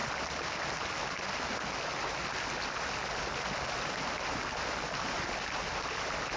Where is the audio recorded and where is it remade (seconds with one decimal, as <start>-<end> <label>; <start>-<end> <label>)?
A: 0.0-6.4 recorded